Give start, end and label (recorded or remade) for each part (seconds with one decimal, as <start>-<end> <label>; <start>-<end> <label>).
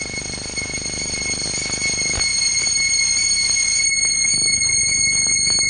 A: 0.0-4.8 recorded; 4.8-5.7 remade